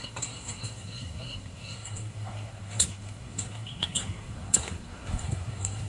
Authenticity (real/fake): fake